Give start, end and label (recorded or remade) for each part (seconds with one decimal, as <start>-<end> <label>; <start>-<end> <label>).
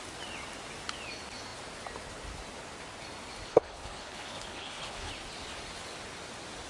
0.0-3.5 recorded; 3.5-5.1 remade; 5.1-6.7 recorded